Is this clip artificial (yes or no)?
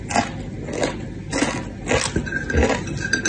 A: no